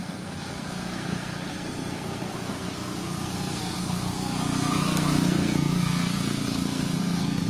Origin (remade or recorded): remade